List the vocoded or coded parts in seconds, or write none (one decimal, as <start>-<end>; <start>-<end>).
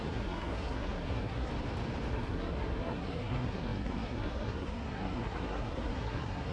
0.0-1.5; 2.1-6.5